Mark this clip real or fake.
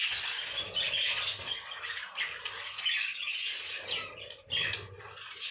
real